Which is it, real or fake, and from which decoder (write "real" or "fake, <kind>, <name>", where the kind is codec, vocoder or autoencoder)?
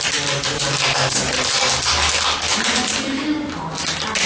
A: real